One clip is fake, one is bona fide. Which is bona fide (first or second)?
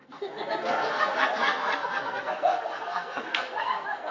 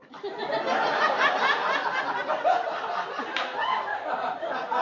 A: second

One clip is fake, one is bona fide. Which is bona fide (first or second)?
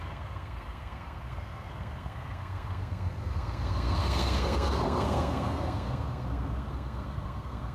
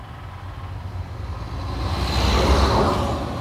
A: second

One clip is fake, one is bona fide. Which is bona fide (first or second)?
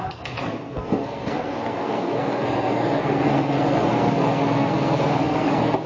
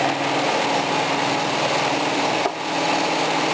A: second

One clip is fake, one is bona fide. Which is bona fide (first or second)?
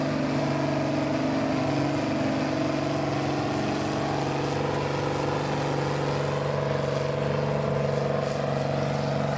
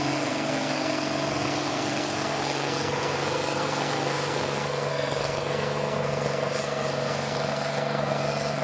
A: first